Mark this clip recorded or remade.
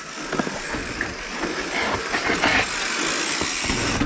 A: recorded